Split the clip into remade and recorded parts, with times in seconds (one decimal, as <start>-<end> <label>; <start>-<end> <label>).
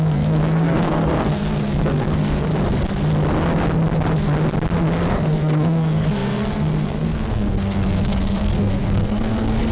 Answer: 0.0-2.5 remade; 2.5-5.1 recorded; 5.1-9.7 remade